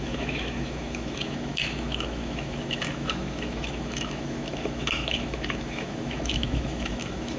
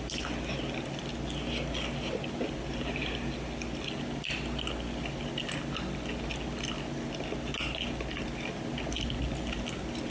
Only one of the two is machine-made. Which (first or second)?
first